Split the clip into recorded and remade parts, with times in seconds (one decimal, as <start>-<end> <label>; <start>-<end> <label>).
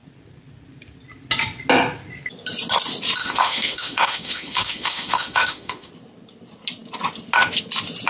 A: 0.0-3.2 recorded; 3.2-5.9 remade; 5.9-8.1 recorded